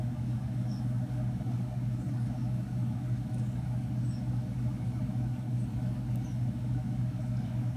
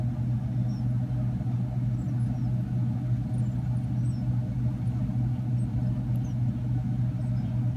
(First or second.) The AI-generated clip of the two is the first